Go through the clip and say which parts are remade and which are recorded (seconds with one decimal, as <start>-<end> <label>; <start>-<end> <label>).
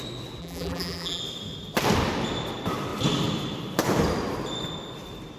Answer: 0.0-0.4 recorded; 0.4-1.2 remade; 1.2-5.4 recorded